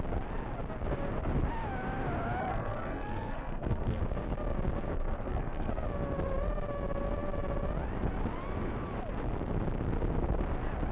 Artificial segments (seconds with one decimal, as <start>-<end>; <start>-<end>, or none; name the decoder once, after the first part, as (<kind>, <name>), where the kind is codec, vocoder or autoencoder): 2.4-4.0 (codec, SNAC); 4.9-5.7